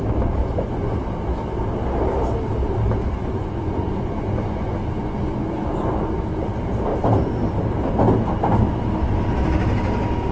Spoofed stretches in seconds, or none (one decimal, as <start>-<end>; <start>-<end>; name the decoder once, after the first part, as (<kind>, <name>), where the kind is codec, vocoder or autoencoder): 0.4-1.0 (vocoder, Vocos); 3.2-5.9